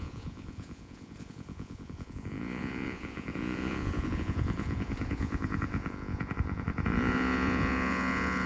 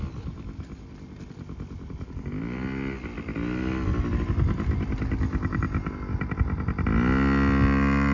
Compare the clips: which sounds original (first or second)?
second